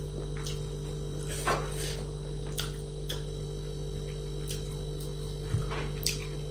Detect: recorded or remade recorded